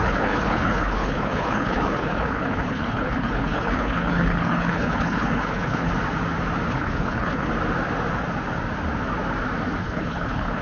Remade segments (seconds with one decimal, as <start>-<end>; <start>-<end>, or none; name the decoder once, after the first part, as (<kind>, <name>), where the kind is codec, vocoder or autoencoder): 0.0-5.9 (codec, HILCodec); 6.7-7.5; 9.8-10.6